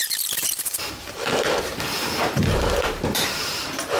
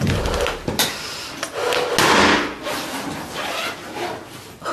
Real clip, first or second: second